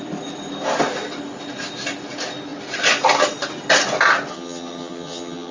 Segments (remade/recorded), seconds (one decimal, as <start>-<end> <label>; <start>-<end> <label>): 0.0-4.3 recorded; 4.3-5.5 remade